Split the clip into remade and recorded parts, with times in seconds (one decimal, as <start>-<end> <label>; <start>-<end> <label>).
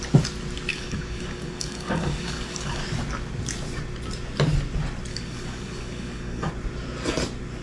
0.0-0.7 recorded; 0.7-2.8 remade; 2.8-5.1 recorded; 5.1-6.5 remade; 6.5-7.6 recorded